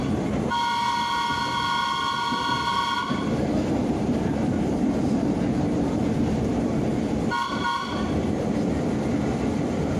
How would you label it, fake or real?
real